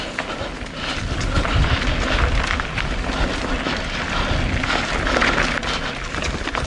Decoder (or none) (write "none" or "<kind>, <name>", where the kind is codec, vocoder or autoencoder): none